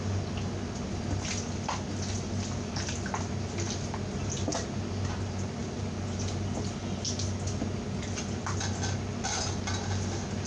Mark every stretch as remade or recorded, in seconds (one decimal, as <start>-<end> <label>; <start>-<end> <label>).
0.0-10.5 recorded